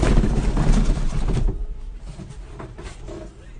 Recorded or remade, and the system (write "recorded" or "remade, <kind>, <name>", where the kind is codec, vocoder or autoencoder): remade, vocoder, BigVGAN v2